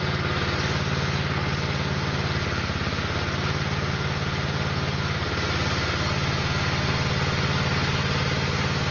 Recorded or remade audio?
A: recorded